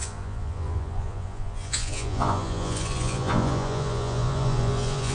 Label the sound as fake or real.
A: fake